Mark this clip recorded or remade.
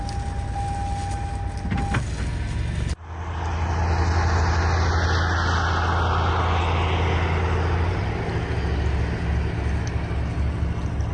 recorded